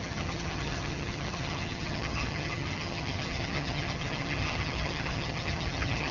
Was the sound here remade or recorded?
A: remade